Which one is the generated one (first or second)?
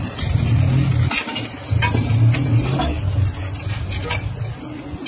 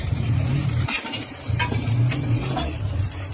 second